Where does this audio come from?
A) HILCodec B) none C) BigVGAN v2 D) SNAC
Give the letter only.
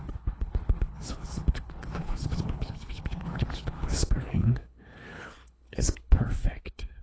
A